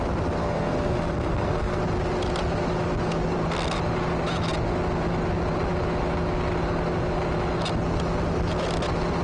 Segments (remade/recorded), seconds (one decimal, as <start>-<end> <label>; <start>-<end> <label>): 0.0-0.4 recorded; 0.4-1.8 remade; 1.8-9.2 recorded